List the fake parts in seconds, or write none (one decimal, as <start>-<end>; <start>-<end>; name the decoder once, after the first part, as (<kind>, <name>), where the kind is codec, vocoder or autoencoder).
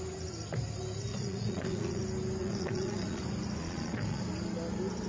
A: 1.1-2.0 (vocoder, Vocos); 2.4-3.2; 3.6-4.2